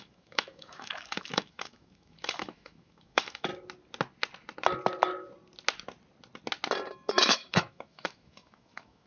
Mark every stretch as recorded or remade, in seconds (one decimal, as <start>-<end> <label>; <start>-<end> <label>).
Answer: 0.0-3.5 remade; 3.5-7.1 recorded; 7.1-9.1 remade